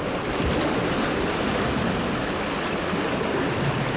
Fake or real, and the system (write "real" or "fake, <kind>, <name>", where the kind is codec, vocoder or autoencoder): real